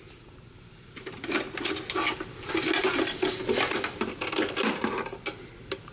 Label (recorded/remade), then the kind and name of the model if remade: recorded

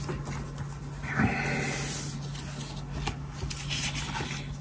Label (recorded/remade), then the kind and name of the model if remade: recorded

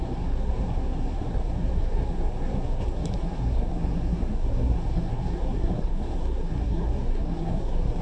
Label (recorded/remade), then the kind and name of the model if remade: remade, codec, SNAC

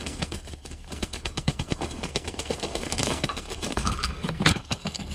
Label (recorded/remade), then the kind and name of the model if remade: remade, codec, SNAC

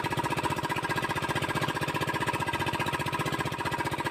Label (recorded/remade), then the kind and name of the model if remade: recorded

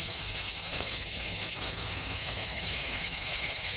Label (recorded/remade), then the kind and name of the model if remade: remade, codec, SNAC